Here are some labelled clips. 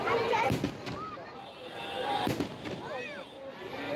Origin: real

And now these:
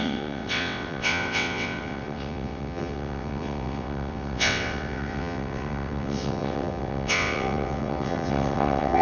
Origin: fake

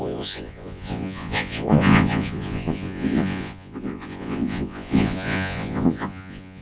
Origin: fake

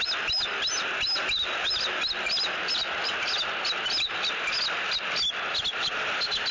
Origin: real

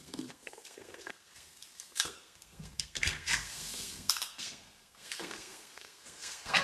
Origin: fake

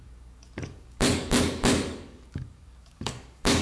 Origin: fake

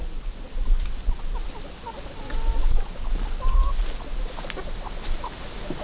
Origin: real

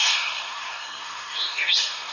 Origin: fake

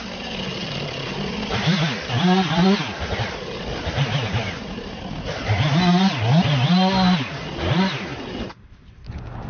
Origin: real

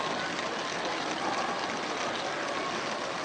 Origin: real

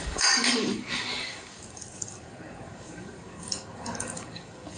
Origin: fake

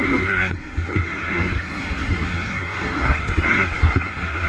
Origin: fake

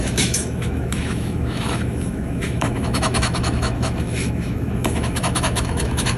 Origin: fake